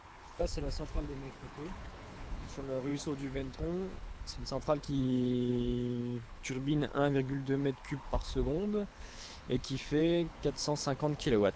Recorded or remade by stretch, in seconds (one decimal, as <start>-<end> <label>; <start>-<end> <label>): 0.0-11.6 remade